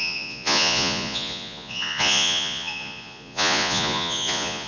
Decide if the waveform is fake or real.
fake